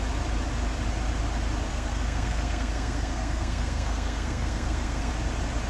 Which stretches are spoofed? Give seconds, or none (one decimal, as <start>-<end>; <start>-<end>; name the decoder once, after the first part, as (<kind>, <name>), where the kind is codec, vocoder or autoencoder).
1.7-5.1 (codec, SNAC)